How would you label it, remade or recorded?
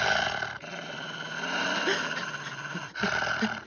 recorded